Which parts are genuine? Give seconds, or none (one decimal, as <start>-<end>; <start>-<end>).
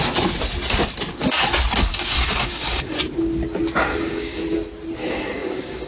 0.0-1.9; 3.0-3.9; 4.4-5.0